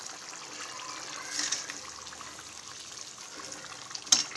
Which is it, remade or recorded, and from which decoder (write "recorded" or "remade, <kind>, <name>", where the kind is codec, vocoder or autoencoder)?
recorded